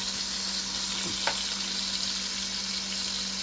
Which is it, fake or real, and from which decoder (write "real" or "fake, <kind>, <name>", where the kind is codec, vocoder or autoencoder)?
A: real